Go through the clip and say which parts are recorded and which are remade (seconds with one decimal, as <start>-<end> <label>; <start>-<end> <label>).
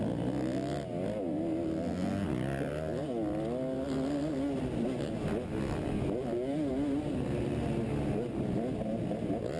0.0-9.6 recorded